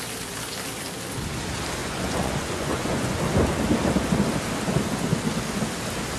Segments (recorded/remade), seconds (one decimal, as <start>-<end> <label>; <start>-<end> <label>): 0.0-1.8 recorded; 1.8-3.2 remade; 3.2-6.2 recorded